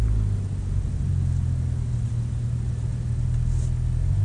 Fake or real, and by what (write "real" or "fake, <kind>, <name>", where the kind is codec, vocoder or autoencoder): real